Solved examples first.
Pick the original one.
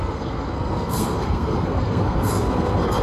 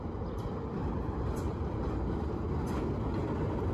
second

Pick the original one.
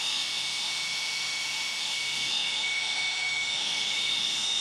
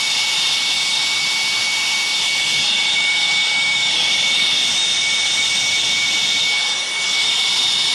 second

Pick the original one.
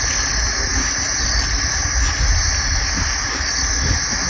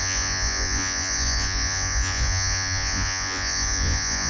first